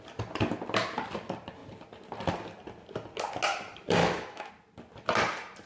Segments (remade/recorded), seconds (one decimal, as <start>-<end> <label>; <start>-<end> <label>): 0.0-4.0 recorded; 4.0-4.5 remade; 4.5-5.7 recorded